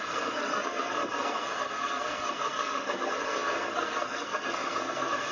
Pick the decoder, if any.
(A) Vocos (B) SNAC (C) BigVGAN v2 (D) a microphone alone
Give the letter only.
B